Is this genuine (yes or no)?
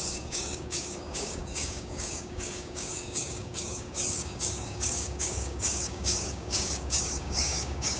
no